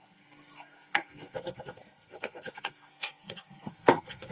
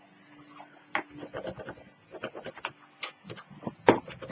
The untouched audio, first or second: second